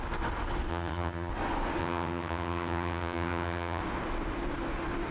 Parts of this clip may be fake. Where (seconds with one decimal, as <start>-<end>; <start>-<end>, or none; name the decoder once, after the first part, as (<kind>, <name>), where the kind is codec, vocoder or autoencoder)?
0.7-1.3 (vocoder, HiFi-GAN); 1.8-3.8